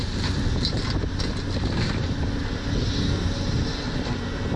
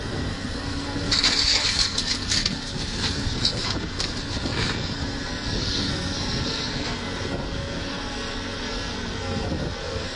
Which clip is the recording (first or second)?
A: first